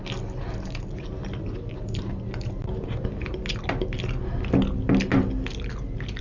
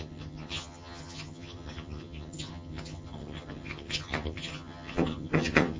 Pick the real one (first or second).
first